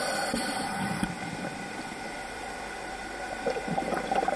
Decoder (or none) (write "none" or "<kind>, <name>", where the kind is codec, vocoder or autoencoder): none